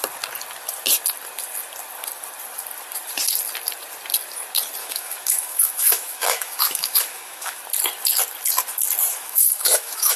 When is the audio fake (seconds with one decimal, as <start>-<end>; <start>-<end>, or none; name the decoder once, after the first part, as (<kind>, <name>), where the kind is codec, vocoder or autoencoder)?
4.8-7.6 (autoencoder, DAC-VAE); 9.1-10.2